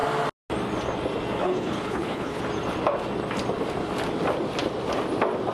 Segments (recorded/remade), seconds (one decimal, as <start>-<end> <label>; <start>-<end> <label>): 0.0-1.4 recorded; 1.4-2.4 remade; 2.4-5.5 recorded

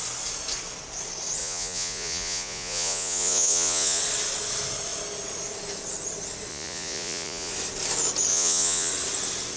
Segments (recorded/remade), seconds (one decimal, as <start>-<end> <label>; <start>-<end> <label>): 0.0-1.4 recorded; 1.4-4.0 remade; 4.0-6.5 recorded; 6.5-7.5 remade; 7.5-8.3 recorded; 8.3-8.9 remade; 8.9-9.6 recorded

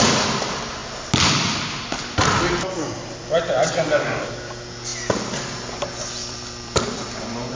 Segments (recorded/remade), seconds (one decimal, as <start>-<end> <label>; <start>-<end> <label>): 0.0-0.8 remade; 0.8-3.2 recorded; 3.2-4.9 remade; 4.9-6.2 recorded; 6.2-7.5 remade

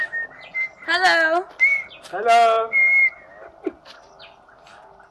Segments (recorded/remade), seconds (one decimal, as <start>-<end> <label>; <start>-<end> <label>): 0.0-5.1 recorded

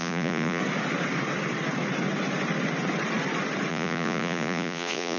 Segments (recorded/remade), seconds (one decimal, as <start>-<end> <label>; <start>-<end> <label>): 0.0-0.6 remade; 0.6-3.7 recorded; 3.7-5.2 remade